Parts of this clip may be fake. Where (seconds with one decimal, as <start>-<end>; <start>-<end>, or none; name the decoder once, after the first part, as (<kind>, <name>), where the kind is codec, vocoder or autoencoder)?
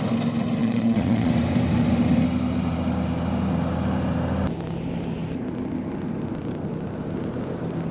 0.6-1.3 (vocoder, Vocos)